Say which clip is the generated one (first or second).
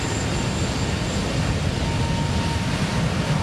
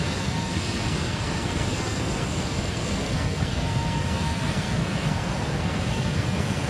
second